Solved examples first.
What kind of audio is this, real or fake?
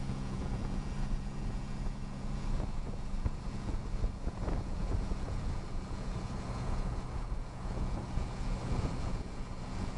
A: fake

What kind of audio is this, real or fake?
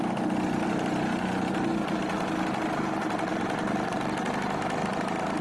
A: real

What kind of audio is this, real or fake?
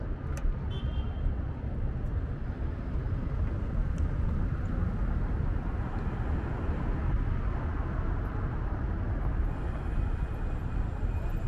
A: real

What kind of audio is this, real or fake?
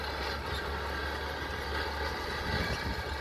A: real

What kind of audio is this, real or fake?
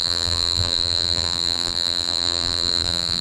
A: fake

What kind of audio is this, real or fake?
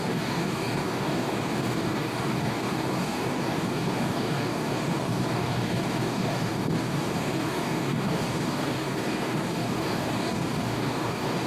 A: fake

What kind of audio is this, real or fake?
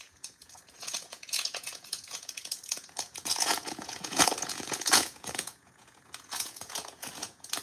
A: fake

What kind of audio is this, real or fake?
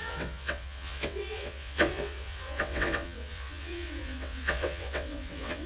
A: fake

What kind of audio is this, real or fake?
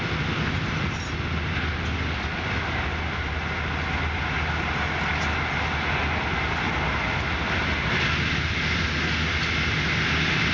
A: real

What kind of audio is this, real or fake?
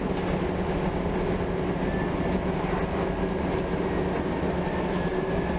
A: real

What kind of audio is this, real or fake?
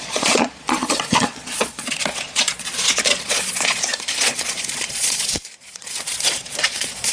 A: fake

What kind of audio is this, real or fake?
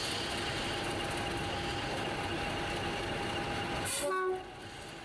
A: real